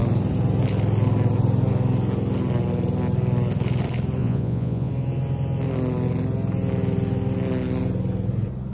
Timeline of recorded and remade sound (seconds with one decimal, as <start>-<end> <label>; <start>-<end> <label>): 0.0-4.2 recorded; 4.2-4.9 remade; 4.9-8.7 recorded